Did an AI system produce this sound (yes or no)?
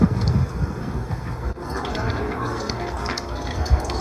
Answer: yes